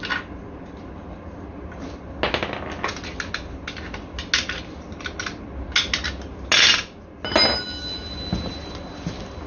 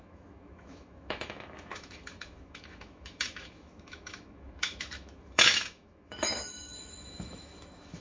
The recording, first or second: first